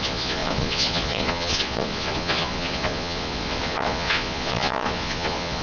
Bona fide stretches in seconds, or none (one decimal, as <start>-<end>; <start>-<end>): none